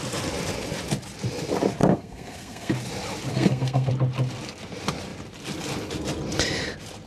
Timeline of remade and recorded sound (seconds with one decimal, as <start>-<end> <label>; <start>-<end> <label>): 0.0-1.8 recorded; 1.8-2.7 remade; 2.7-3.3 recorded; 3.3-3.9 remade; 3.9-7.1 recorded